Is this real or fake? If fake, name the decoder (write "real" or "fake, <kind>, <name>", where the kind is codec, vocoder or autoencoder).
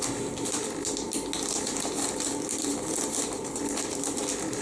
real